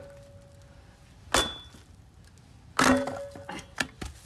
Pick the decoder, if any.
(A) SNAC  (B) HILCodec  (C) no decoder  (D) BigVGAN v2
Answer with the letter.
C